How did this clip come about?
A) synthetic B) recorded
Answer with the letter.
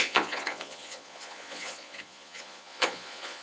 A